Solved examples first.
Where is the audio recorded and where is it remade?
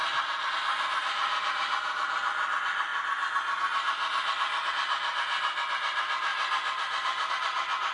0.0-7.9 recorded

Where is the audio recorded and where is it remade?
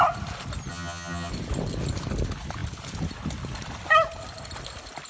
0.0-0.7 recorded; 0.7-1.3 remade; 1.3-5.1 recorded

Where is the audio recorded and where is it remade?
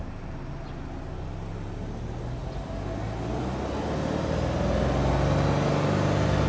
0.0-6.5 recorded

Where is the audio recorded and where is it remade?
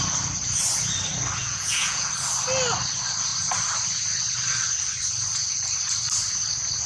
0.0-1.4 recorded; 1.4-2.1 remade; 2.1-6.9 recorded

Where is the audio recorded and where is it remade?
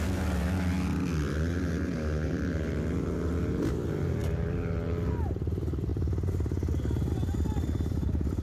0.0-8.4 recorded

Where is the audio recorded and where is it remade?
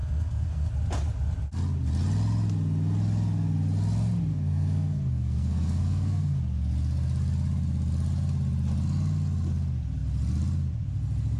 0.0-0.7 remade; 0.7-4.3 recorded; 4.3-6.4 remade; 6.4-11.4 recorded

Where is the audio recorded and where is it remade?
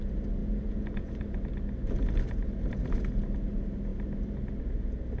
0.0-0.4 recorded; 0.4-1.2 remade; 1.2-5.2 recorded